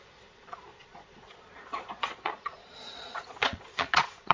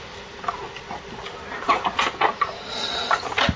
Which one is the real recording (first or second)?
second